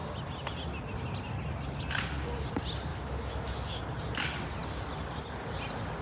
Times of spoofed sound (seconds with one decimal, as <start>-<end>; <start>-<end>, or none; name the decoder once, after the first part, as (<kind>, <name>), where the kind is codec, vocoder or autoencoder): 2.9-3.8 (autoencoder, DAC-VAE)